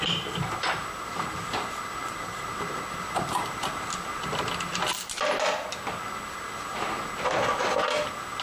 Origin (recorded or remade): recorded